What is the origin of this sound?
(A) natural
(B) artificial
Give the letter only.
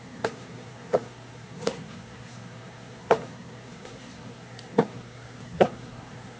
B